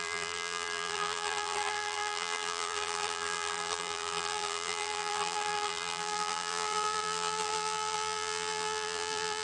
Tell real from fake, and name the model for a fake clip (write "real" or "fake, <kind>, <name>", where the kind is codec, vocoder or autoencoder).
fake, vocoder, BigVGAN v2